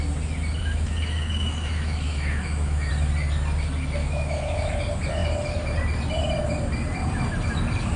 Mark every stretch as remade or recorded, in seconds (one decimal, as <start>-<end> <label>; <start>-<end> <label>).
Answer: 0.0-0.6 recorded; 0.6-2.9 remade; 2.9-4.0 recorded; 4.0-4.7 remade; 4.7-8.0 recorded